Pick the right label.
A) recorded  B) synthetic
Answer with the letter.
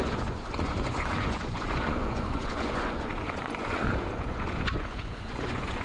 B